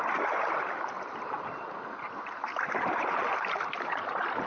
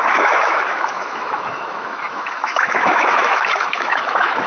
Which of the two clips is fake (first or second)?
second